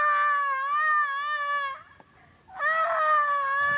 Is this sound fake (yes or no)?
no